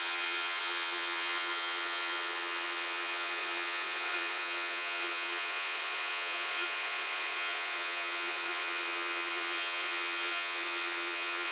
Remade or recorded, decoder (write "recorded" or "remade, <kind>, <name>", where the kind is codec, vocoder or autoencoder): remade, vocoder, Vocos